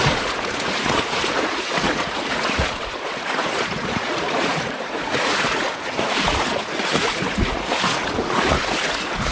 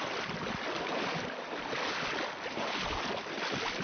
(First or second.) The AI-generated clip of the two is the first